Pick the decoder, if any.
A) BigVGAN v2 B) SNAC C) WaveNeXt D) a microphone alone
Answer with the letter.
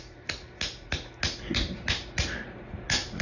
D